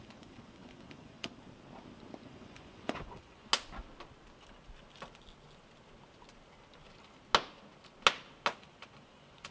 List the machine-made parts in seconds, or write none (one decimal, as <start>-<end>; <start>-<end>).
0.0-1.3; 2.2-3.5; 8.6-9.5